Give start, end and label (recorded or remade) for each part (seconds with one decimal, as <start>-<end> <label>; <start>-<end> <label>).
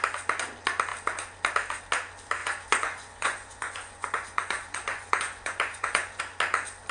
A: 0.0-2.4 recorded; 2.4-6.2 remade; 6.2-6.9 recorded